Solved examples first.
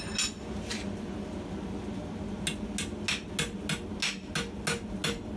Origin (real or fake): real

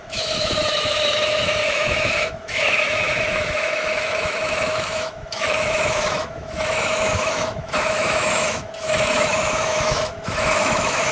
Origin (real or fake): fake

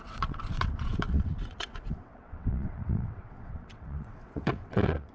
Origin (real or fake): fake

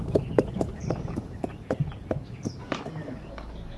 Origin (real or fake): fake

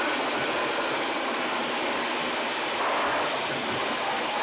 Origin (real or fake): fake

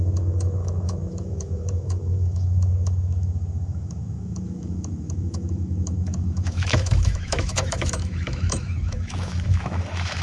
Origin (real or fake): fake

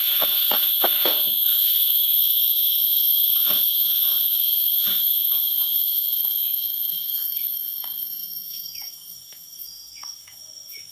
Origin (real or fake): fake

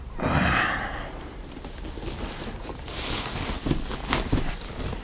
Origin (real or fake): real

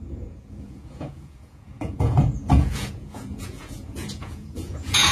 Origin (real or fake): fake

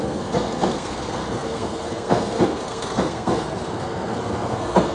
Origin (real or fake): fake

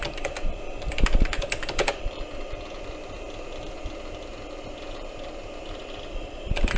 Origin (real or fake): fake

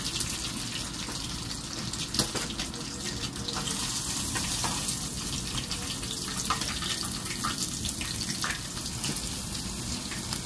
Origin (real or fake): real